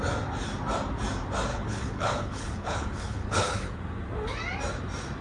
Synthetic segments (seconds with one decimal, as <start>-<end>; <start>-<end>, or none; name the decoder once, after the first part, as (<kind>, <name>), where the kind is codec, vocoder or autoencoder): 1.5-3.8 (codec, HILCodec)